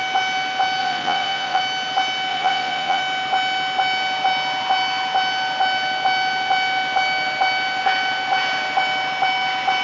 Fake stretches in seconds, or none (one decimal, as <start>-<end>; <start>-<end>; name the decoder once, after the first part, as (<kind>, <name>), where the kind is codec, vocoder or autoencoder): 0.8-1.6 (vocoder, Vocos); 2.3-3.0